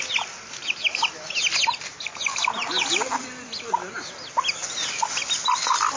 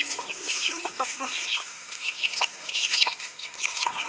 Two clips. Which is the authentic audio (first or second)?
first